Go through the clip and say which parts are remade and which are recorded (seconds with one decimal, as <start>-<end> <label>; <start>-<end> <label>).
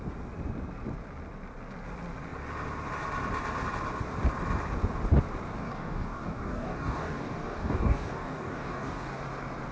0.0-5.6 recorded; 5.6-9.2 remade; 9.2-9.7 recorded